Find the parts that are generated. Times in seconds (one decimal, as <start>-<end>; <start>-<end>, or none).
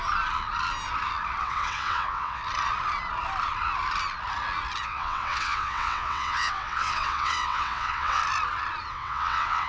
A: 1.4-2.4; 4.8-8.2; 8.9-9.7